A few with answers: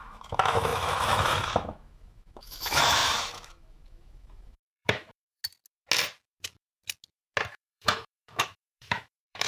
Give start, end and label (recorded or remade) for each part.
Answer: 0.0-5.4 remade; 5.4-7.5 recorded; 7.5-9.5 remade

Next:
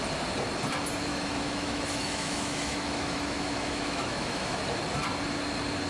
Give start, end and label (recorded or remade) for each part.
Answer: 0.0-1.1 recorded; 1.1-4.6 remade; 4.6-5.9 recorded

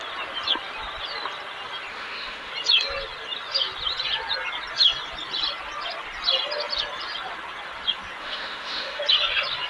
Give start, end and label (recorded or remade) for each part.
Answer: 0.0-1.9 recorded; 1.9-2.5 remade; 2.5-8.2 recorded; 8.2-9.0 remade; 9.0-9.7 recorded

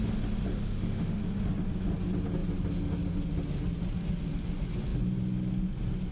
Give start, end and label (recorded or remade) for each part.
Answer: 0.0-0.5 recorded; 0.5-1.2 remade; 1.2-6.1 recorded

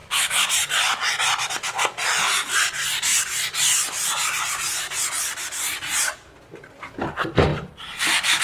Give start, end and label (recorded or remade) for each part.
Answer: 0.0-0.5 remade; 0.5-8.4 recorded

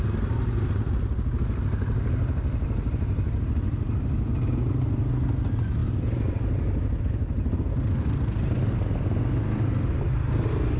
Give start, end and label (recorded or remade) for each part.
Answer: 0.0-10.8 recorded

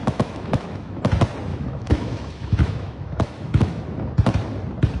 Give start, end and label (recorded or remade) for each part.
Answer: 0.0-1.0 remade; 1.0-1.5 recorded; 1.5-3.8 remade; 3.8-5.0 recorded

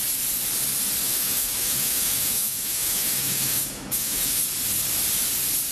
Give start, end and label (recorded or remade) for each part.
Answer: 0.0-1.0 recorded; 1.0-4.4 remade; 4.4-5.7 recorded